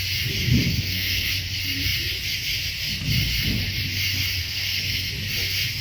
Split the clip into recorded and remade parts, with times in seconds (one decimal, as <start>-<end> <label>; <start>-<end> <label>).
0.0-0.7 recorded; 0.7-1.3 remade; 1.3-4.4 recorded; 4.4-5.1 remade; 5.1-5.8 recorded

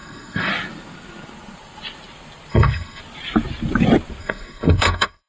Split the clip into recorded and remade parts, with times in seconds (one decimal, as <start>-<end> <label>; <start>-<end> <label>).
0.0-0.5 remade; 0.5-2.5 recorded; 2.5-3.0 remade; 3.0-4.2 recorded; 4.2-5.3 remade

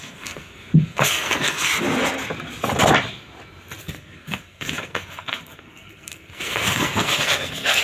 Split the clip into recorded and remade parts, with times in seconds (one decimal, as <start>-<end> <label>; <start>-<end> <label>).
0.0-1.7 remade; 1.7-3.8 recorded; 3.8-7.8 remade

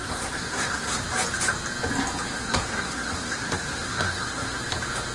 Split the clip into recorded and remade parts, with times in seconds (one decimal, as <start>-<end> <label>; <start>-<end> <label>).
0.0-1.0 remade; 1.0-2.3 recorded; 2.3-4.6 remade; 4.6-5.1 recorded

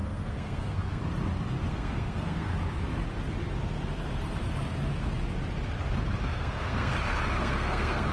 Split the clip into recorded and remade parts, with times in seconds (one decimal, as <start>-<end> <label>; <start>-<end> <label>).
0.0-1.0 remade; 1.0-1.7 recorded; 1.7-2.5 remade; 2.5-6.2 recorded; 6.2-6.9 remade; 6.9-7.4 recorded; 7.4-8.1 remade